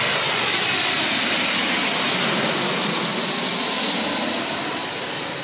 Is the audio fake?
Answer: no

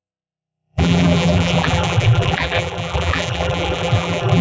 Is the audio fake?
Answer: yes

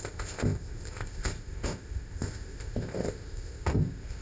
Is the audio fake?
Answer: yes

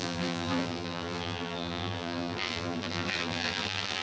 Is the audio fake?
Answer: yes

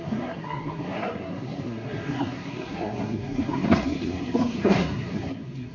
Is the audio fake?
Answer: yes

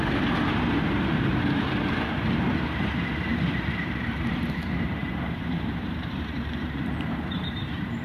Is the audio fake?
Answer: yes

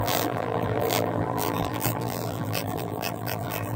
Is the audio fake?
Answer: yes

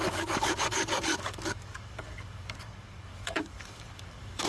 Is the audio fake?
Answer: yes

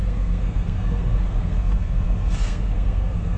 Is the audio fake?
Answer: yes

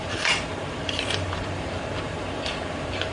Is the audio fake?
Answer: yes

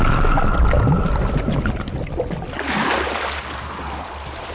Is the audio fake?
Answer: no